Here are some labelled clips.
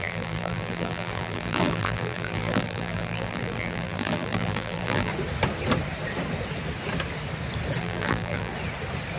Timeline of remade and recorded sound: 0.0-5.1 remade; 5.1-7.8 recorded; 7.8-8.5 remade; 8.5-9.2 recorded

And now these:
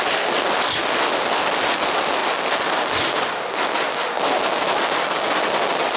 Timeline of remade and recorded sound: 0.0-2.2 remade; 2.2-6.0 recorded

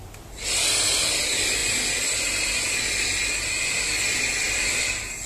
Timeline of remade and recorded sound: 0.0-5.3 recorded

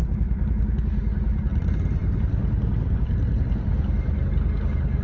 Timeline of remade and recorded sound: 0.0-5.0 recorded

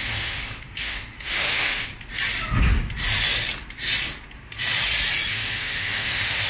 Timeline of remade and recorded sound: 0.0-1.9 remade; 1.9-5.3 recorded; 5.3-6.5 remade

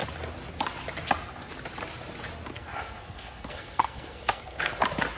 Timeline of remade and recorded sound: 0.0-2.5 recorded; 2.5-4.7 remade; 4.7-5.2 recorded

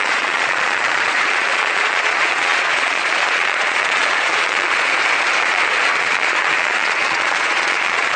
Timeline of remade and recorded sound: 0.0-4.9 remade; 4.9-5.4 recorded; 5.4-8.2 remade